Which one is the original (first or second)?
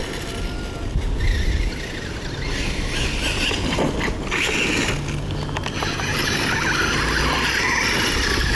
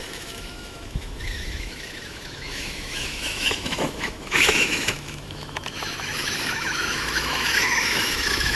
first